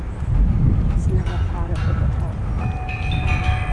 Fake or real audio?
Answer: real